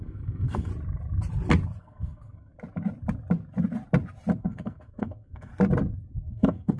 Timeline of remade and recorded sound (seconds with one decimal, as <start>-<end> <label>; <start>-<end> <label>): 0.0-0.7 remade; 0.7-1.8 recorded; 1.8-2.5 remade; 2.5-4.4 recorded; 4.4-5.5 remade; 5.5-6.1 recorded; 6.1-6.8 remade